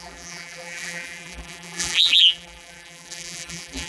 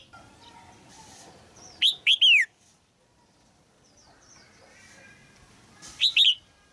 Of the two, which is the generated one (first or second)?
first